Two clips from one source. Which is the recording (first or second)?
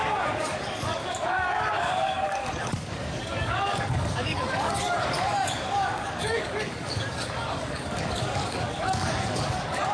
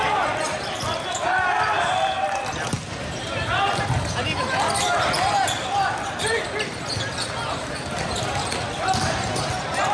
second